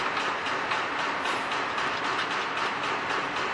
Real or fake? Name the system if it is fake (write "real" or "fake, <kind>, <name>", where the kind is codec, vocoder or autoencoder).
real